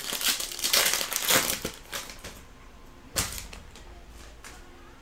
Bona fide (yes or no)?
no